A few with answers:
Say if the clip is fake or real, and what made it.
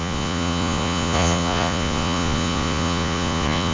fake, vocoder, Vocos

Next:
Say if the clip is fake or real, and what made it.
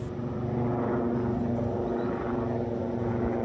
real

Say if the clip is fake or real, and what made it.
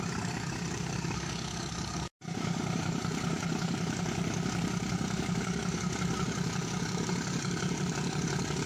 fake, codec, DAC